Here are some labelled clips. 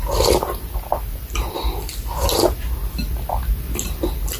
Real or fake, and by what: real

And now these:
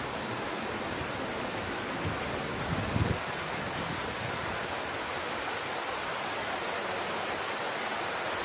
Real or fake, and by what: real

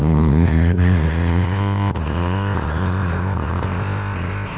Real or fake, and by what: fake, codec, ZipCodec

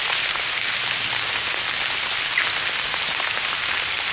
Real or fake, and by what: real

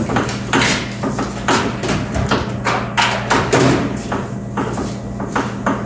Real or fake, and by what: real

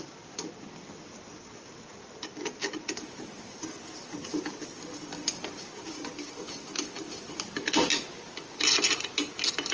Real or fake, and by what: real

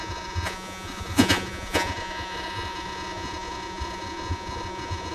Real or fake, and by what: fake, vocoder, Vocos